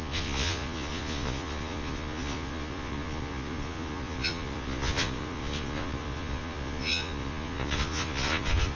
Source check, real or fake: fake